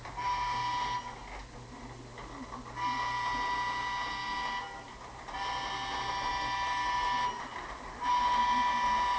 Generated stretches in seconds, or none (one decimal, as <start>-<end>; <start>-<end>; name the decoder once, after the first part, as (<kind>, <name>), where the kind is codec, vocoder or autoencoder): none